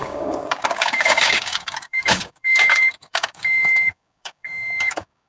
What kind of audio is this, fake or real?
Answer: fake